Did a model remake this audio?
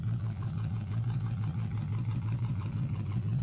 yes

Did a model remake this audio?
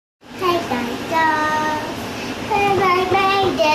no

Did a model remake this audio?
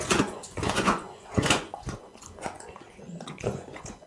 yes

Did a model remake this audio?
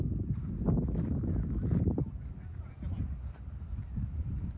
no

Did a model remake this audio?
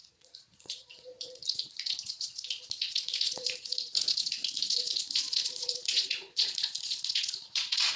yes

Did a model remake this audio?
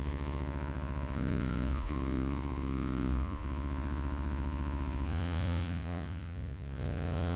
yes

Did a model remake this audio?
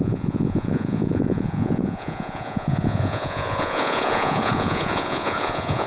yes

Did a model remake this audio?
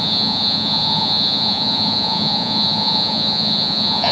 yes